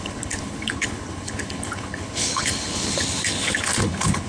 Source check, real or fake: fake